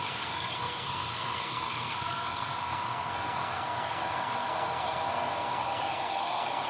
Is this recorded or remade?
remade